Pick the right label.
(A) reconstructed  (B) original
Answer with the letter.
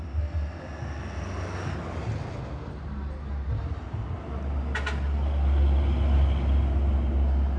B